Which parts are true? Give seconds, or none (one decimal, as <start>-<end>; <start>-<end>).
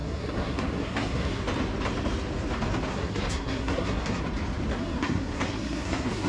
1.4-2.9; 4.2-4.7